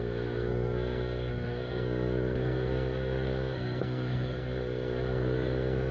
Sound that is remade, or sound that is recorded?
remade